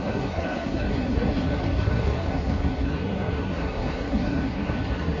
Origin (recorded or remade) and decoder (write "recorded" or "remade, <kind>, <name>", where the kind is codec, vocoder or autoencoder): remade, codec, SNAC